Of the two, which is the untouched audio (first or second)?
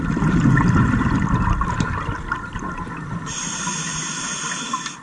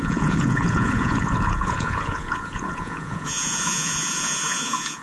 first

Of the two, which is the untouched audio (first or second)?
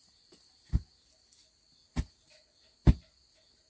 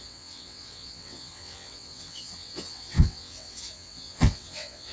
first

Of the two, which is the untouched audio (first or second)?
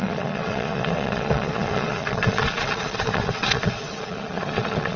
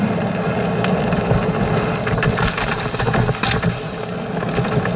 second